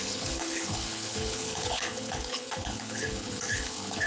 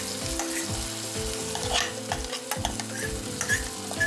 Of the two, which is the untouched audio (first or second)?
second